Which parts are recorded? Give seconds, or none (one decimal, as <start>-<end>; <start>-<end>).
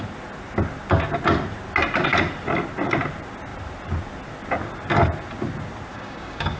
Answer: 0.0-5.9